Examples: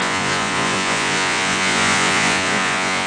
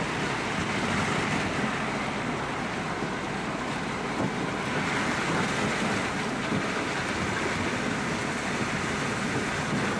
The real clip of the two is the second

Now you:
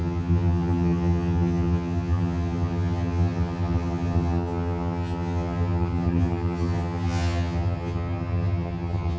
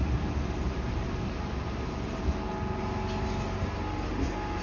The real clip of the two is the second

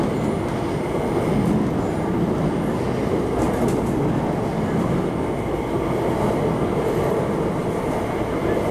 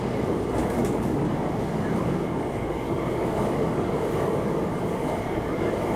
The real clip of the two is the first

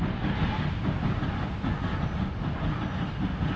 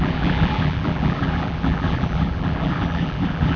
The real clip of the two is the first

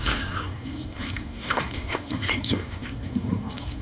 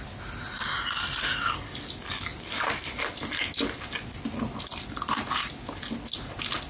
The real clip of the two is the second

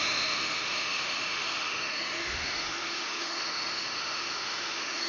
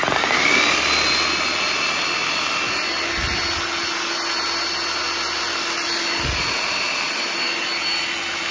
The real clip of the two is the second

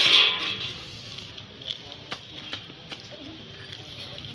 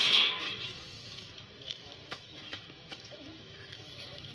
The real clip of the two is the first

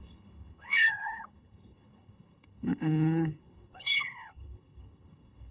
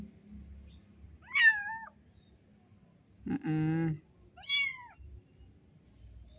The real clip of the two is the second